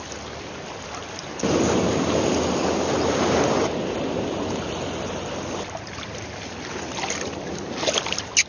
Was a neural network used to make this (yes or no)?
no